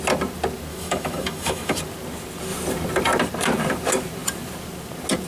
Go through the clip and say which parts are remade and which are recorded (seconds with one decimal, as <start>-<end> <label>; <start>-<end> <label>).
0.0-0.7 recorded; 0.7-1.8 remade; 1.8-5.3 recorded